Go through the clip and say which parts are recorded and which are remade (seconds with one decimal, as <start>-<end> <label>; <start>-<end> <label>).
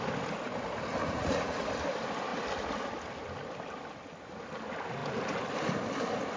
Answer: 0.0-1.0 recorded; 1.0-1.7 remade; 1.7-6.4 recorded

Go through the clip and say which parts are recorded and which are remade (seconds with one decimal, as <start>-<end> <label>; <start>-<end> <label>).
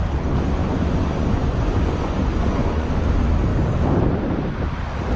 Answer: 0.0-0.6 recorded; 0.6-2.9 remade; 2.9-5.2 recorded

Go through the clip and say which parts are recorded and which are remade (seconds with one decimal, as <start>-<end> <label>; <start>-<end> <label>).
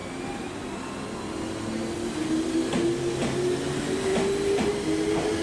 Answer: 0.0-5.4 recorded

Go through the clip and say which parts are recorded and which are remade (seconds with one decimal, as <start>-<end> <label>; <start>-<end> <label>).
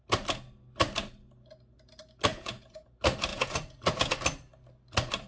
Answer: 0.0-2.3 recorded; 2.3-2.9 remade; 2.9-3.3 recorded; 3.3-4.1 remade; 4.1-5.3 recorded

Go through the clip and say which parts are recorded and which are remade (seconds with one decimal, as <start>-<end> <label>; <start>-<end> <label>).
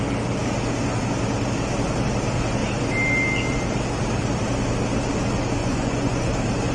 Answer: 0.0-5.6 recorded; 5.6-6.3 remade; 6.3-6.7 recorded